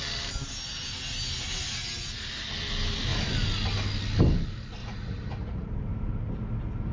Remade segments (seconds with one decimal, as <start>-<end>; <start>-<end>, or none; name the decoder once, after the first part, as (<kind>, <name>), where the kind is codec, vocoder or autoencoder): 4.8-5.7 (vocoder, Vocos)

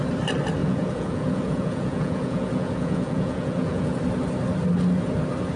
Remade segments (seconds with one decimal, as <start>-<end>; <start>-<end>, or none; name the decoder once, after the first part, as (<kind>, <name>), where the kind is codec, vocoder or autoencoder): 0.6-4.0 (vocoder, Vocos)

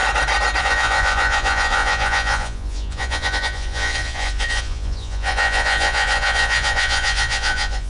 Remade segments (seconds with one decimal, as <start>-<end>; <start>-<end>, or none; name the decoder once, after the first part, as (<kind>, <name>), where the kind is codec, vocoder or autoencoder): 0.6-7.9 (vocoder, Vocos)